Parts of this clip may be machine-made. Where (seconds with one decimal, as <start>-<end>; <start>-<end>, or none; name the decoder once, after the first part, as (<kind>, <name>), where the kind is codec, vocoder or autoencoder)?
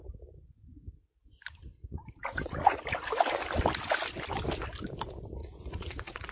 1.8-2.8 (vocoder, Vocos); 5.4-6.3